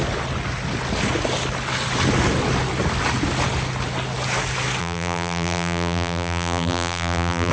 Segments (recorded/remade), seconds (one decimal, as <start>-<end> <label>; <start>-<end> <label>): 0.0-4.8 recorded; 4.8-7.5 remade